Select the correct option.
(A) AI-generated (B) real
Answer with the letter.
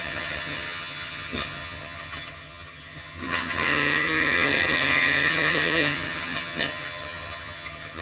A